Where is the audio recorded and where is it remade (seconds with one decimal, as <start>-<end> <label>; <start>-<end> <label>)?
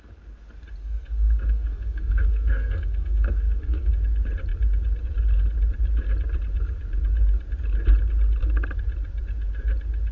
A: 0.0-0.8 recorded; 0.8-3.9 remade; 3.9-10.1 recorded